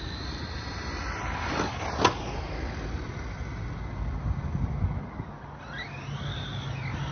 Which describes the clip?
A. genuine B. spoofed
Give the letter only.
A